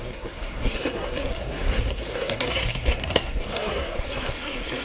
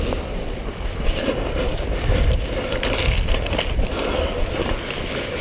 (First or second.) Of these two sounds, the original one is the second